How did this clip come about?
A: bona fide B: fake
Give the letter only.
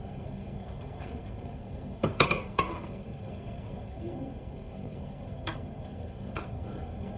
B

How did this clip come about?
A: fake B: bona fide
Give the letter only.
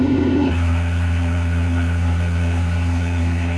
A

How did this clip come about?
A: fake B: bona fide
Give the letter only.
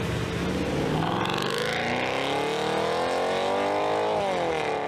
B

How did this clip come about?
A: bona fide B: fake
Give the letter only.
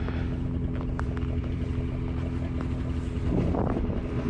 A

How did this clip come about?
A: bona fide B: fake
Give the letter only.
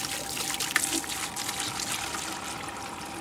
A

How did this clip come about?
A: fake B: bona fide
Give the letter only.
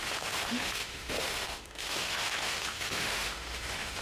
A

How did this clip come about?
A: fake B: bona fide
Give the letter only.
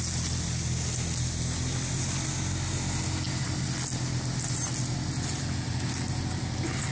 B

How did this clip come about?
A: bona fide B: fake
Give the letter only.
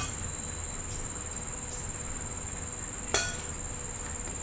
A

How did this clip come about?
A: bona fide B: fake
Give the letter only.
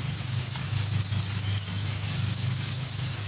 B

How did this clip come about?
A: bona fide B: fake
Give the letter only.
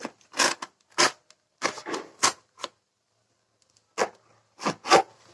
A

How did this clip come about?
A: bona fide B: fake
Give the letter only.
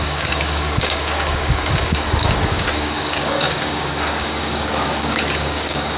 B